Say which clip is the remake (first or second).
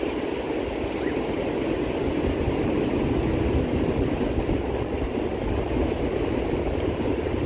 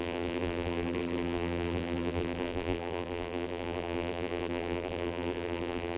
second